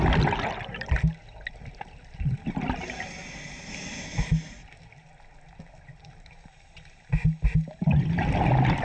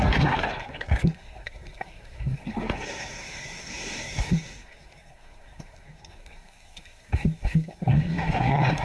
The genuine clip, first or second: first